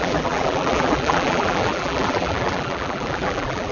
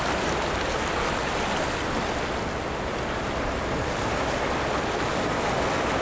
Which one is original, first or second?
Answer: second